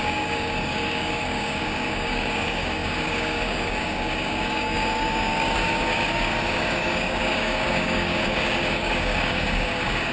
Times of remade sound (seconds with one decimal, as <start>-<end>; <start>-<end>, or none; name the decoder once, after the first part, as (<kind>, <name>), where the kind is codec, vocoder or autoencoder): 0.0-10.1 (codec, DAC)